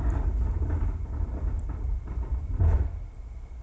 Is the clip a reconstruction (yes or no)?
yes